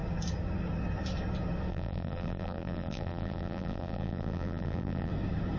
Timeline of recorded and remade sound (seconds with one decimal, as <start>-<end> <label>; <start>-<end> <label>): 0.0-1.7 recorded; 1.7-5.1 remade; 5.1-5.6 recorded